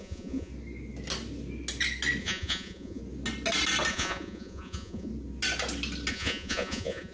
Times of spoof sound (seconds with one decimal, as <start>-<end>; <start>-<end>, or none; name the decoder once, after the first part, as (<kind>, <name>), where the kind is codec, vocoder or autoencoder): 0.0-0.5 (vocoder, Vocos); 2.2-3.0; 3.9-5.1; 6.1-7.1